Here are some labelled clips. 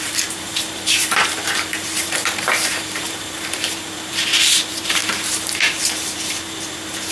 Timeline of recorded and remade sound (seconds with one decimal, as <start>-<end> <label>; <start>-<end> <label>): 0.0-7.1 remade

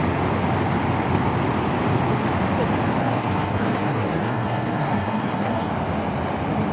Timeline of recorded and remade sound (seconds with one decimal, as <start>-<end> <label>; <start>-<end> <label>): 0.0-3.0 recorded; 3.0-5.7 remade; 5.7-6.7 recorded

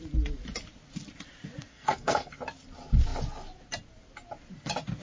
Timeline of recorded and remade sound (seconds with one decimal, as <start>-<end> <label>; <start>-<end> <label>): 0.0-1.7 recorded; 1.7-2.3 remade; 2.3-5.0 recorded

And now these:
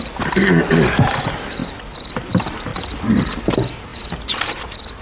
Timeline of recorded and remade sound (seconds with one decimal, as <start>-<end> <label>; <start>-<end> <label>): 0.0-1.6 recorded; 1.6-2.2 remade; 2.2-2.7 recorded; 2.7-3.5 remade; 3.5-5.0 recorded